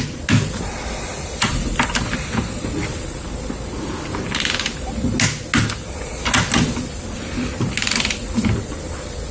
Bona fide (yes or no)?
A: yes